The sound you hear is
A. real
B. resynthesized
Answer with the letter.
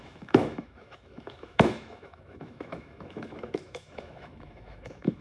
B